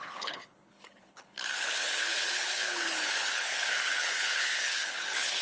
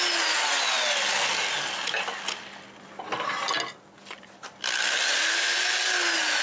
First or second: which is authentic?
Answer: second